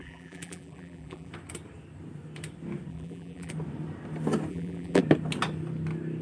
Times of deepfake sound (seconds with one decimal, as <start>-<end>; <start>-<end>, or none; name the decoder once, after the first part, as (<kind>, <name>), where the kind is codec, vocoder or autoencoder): 0.0-1.3 (vocoder, BigVGAN v2); 2.9-3.5; 4.5-5.0